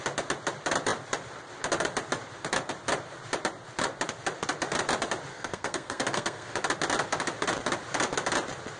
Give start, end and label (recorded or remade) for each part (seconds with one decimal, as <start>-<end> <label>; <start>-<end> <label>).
0.0-5.3 recorded; 5.3-6.5 remade; 6.5-8.8 recorded